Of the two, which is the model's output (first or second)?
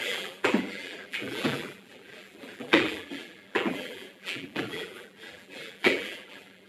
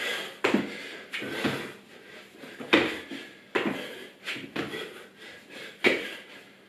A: first